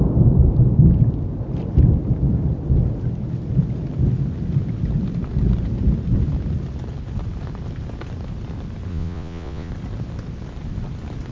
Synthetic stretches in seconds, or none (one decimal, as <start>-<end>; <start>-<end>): 8.9-9.7